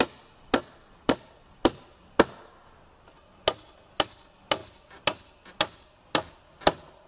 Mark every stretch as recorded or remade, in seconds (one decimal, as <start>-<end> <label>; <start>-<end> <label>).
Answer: 0.0-0.8 recorded; 0.8-2.1 remade; 2.1-7.1 recorded